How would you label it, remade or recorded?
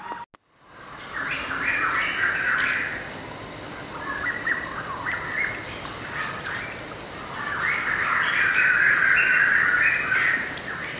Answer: recorded